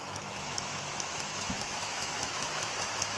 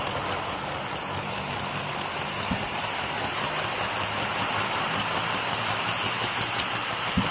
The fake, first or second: first